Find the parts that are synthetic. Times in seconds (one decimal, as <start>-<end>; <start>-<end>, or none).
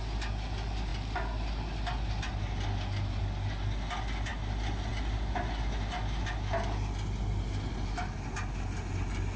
none